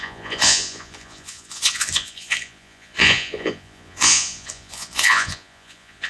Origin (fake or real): fake